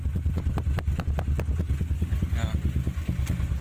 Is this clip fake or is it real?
real